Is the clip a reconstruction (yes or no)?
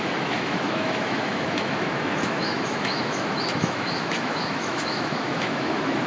yes